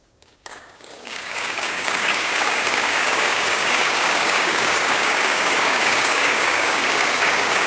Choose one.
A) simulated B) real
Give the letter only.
A